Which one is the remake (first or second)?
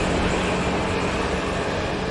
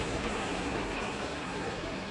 second